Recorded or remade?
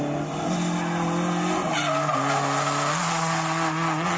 recorded